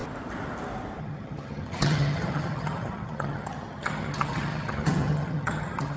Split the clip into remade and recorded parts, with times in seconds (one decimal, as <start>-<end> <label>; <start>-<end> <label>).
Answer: 0.0-1.0 recorded; 1.0-6.0 remade